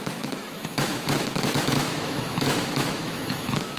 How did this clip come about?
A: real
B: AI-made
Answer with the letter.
B